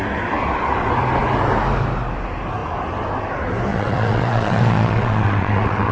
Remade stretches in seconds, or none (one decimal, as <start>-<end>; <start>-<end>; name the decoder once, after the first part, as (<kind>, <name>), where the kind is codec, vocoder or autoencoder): 3.7-5.9 (vocoder, WaveNeXt)